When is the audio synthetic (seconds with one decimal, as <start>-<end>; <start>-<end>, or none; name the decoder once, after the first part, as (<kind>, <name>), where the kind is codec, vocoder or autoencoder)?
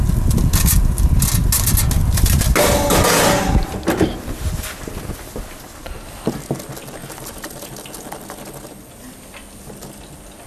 none